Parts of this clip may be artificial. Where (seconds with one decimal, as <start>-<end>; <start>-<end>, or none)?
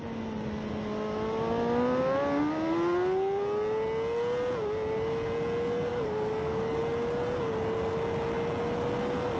5.9-6.8